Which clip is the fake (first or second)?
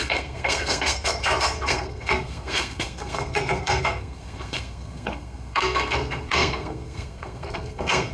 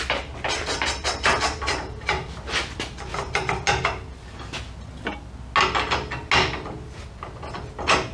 first